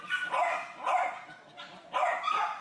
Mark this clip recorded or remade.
recorded